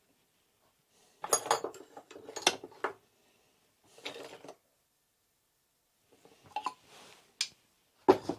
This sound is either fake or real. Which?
real